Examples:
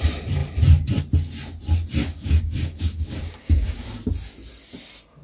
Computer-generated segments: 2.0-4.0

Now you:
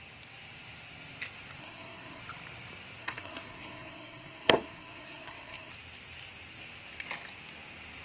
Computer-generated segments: 1.6-2.2; 3.0-5.7